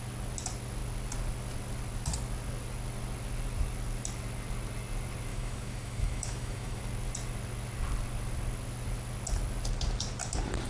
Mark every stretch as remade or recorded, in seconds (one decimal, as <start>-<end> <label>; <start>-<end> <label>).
0.0-5.3 recorded; 5.3-6.8 remade; 6.8-10.7 recorded